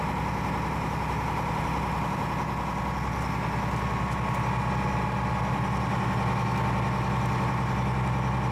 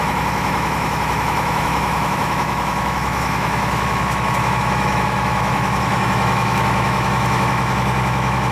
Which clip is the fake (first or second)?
second